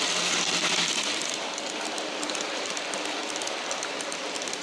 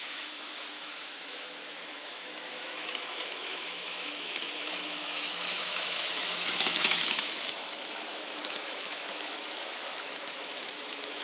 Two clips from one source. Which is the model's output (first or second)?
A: second